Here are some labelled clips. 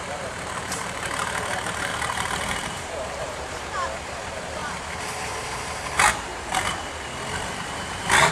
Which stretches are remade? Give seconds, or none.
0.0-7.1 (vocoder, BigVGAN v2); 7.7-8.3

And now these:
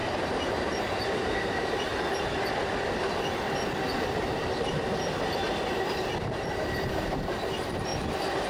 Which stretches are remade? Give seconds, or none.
0.0-1.9 (vocoder, BigVGAN v2); 6.5-7.9